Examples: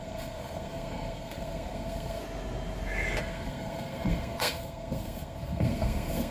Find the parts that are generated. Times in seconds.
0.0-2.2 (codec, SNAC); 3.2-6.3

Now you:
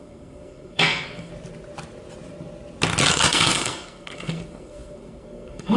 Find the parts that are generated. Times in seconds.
0.0-1.3 (codec, SNAC); 3.1-5.8

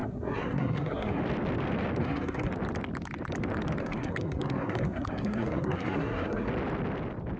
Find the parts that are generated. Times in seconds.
0.0-1.2 (codec, SNAC); 2.0-2.5; 3.8-6.5